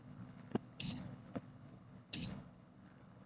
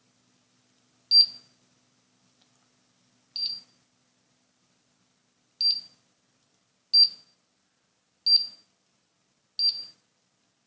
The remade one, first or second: first